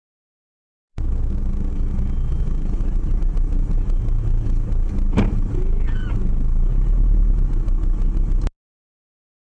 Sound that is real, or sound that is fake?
real